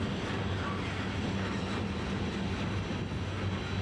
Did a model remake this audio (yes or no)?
no